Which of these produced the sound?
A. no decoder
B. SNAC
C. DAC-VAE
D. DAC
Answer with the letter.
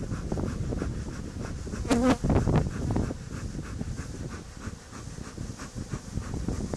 A